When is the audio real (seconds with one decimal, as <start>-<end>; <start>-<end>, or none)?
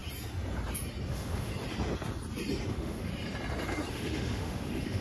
0.0-1.1; 1.5-2.7; 3.1-3.9